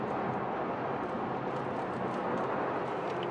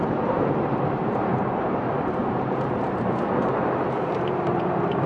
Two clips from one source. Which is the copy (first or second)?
second